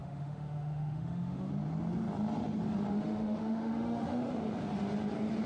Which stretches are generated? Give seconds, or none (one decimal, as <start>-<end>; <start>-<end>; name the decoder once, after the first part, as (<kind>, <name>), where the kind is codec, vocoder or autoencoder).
0.0-1.5 (autoencoder, DAC-VAE); 2.9-4.3